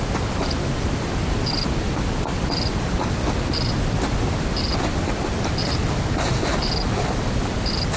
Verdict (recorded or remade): recorded